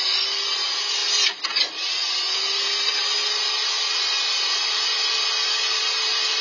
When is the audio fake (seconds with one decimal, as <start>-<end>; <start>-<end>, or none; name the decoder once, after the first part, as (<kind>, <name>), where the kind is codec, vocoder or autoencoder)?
none